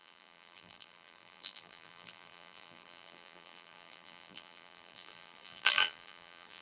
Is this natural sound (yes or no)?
no